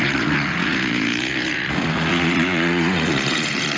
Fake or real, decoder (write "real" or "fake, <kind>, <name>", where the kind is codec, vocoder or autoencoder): fake, vocoder, Vocos